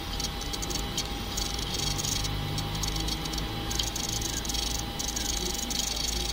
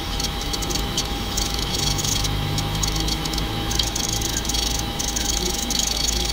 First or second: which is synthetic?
second